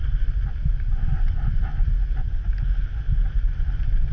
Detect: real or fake real